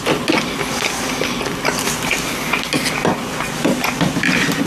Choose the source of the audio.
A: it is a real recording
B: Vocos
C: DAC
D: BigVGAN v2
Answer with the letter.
A